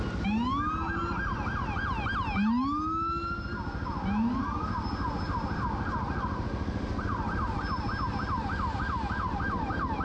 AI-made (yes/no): no